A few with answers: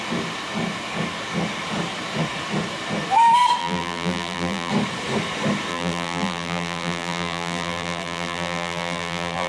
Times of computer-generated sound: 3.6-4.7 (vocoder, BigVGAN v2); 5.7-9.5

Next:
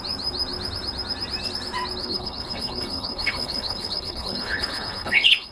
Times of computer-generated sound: 2.0-5.5 (codec, HILCodec)

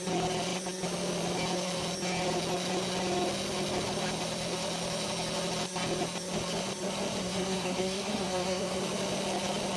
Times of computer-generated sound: 7.2-8.8 (codec, SNAC)